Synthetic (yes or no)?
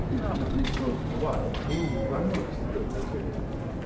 no